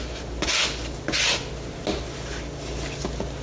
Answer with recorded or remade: recorded